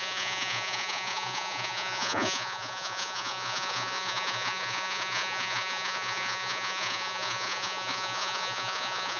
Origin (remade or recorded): remade